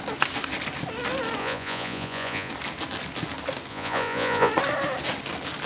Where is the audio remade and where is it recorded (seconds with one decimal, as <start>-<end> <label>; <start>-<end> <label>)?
0.0-1.4 recorded; 1.4-2.5 remade; 2.5-3.7 recorded; 3.7-4.5 remade; 4.5-5.7 recorded